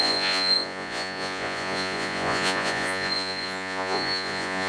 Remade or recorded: remade